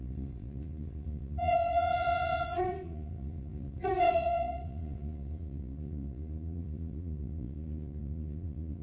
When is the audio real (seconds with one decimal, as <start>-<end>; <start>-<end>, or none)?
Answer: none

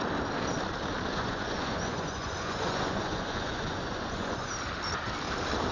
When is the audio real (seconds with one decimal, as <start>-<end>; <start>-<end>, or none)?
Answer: 0.0-1.1; 4.5-5.7

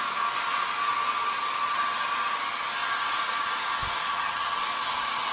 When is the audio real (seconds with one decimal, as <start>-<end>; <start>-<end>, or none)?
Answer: 0.0-4.1; 4.6-5.3

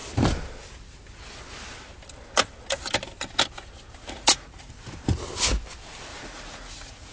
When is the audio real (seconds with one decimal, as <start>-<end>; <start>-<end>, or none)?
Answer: 0.0-4.0; 4.7-6.1

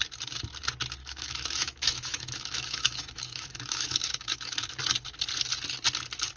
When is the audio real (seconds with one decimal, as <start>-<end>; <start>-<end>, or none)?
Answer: 0.0-1.0; 4.8-6.4